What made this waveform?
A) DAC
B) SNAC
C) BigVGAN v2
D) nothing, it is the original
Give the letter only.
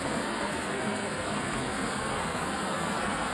B